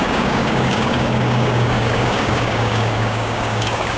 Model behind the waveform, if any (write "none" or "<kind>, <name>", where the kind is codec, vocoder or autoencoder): codec, DAC